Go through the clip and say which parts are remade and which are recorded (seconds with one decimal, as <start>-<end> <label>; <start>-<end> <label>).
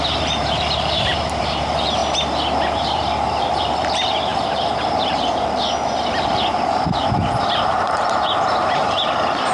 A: 0.0-2.0 remade; 2.0-2.7 recorded; 2.7-7.0 remade; 7.0-7.5 recorded; 7.5-9.5 remade